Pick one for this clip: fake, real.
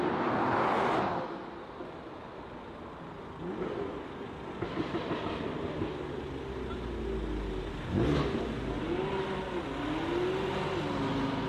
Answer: real